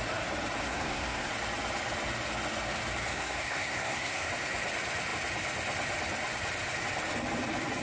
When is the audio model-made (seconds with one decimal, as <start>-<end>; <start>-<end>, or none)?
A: 0.6-1.3; 3.1-4.3